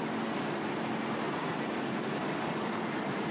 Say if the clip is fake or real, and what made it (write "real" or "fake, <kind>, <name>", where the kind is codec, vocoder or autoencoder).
real